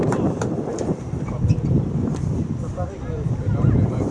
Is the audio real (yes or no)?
no